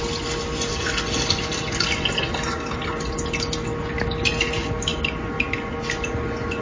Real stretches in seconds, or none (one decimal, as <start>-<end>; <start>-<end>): 0.0-6.6